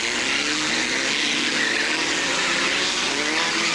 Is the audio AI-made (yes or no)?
no